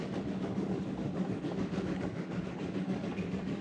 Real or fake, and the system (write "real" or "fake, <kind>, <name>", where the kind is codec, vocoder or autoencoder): fake, codec, DAC